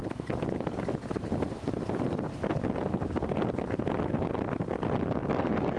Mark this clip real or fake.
real